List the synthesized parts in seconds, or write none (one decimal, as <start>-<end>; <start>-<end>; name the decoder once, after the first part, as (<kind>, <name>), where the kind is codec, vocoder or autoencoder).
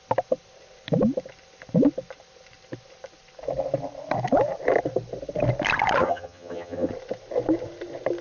6.0-6.9 (vocoder, HiFi-GAN)